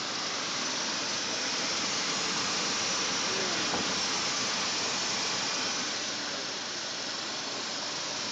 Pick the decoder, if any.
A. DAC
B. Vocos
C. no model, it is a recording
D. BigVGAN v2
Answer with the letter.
C